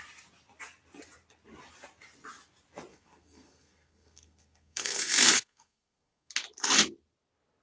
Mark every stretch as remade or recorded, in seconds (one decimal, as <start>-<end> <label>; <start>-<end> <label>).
0.0-2.9 recorded; 2.9-6.3 remade; 6.3-7.6 recorded